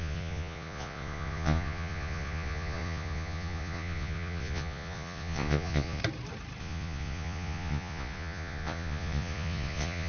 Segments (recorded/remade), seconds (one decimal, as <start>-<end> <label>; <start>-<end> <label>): 0.0-6.0 remade; 6.0-6.6 recorded; 6.6-10.1 remade